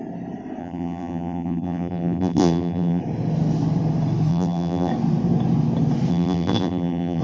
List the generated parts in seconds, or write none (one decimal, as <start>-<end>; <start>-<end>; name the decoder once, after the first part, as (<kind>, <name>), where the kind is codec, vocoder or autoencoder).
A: 0.6-3.0 (vocoder, BigVGAN v2); 4.3-4.9; 6.1-7.2